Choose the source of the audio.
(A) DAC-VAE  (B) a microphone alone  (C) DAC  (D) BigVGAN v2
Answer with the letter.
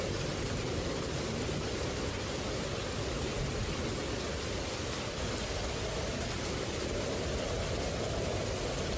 B